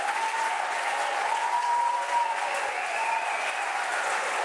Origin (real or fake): fake